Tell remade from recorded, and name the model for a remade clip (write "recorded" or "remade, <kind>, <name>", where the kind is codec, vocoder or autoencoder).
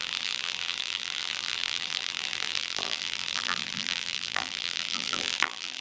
remade, vocoder, BigVGAN v2